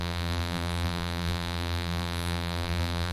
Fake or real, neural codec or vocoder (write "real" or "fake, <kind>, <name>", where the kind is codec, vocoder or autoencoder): fake, vocoder, BigVGAN v2